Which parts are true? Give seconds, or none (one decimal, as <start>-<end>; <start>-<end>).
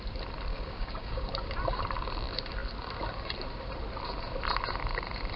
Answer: 0.0-0.5; 1.3-5.4